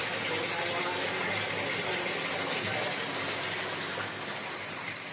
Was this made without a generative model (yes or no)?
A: yes